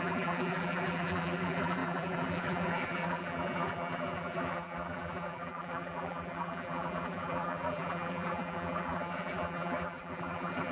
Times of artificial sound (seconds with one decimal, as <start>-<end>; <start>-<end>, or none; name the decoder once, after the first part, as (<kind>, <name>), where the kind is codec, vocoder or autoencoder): 0.0-10.7 (vocoder, BigVGAN v2)